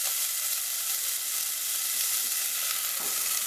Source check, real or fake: real